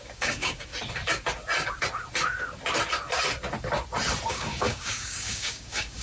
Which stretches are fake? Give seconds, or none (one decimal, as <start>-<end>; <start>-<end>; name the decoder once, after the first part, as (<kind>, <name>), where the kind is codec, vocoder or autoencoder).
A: 0.0-0.7 (codec, DAC); 4.3-6.0